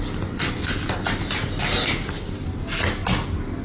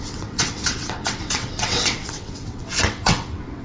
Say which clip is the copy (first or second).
second